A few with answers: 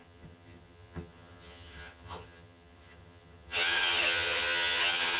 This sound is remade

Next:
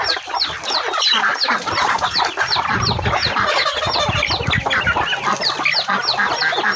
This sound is recorded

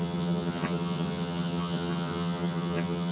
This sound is remade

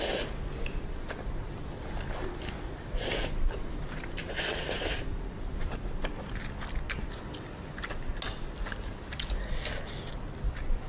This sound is recorded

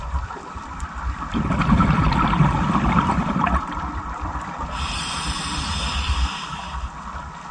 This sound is remade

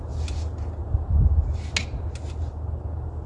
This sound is recorded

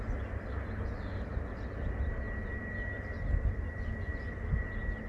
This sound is recorded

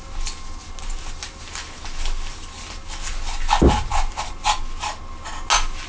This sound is recorded